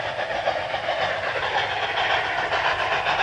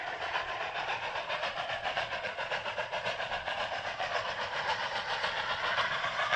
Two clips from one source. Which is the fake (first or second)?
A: second